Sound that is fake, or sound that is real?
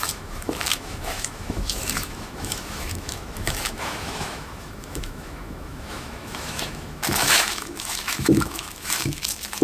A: fake